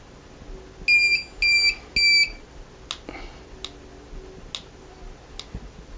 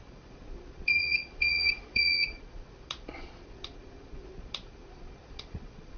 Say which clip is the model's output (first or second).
second